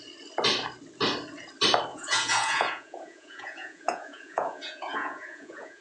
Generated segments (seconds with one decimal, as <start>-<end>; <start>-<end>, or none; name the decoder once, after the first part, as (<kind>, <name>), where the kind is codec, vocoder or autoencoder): 1.9-5.8 (vocoder, Vocos)